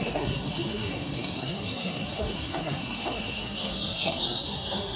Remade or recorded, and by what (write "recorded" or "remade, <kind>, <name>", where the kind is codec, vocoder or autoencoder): remade, codec, SNAC